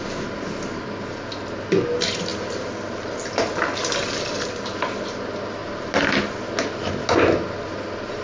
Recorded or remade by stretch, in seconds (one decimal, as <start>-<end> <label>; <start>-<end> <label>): 0.0-8.2 recorded